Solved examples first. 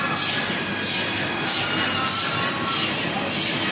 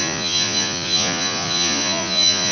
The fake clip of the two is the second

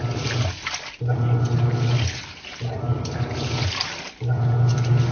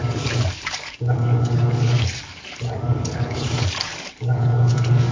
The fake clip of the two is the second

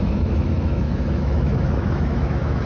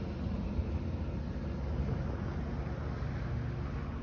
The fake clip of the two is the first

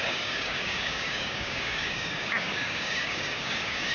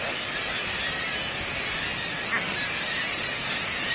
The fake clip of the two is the first